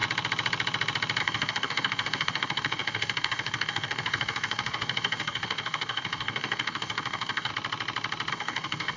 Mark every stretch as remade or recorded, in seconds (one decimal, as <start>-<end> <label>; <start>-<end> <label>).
0.0-1.2 recorded; 1.2-7.5 remade; 7.5-8.3 recorded; 8.3-9.0 remade